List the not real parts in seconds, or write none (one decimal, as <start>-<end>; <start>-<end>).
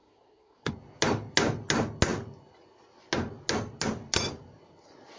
0.0-0.7